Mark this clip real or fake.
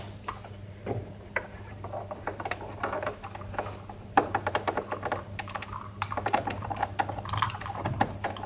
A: fake